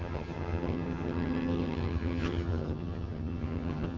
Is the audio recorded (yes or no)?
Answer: no